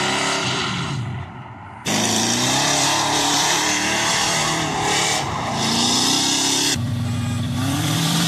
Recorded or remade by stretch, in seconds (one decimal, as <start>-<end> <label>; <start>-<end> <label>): 0.0-8.3 remade